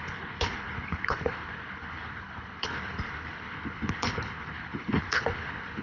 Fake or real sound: fake